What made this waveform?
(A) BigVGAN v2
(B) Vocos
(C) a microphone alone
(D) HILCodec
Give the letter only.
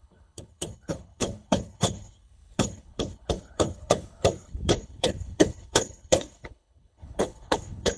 D